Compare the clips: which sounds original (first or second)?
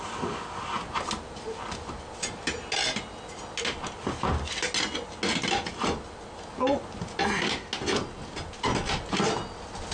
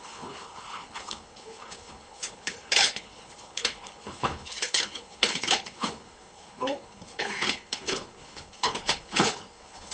first